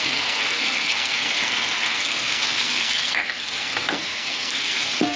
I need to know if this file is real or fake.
fake